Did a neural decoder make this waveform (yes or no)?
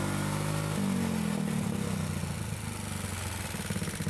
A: no